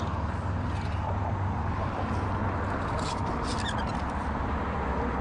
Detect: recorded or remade recorded